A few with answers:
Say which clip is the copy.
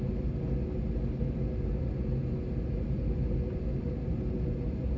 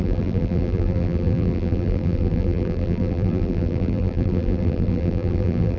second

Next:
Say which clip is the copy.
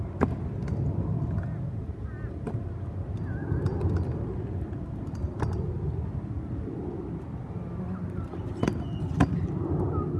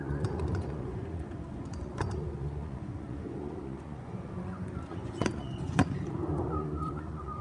second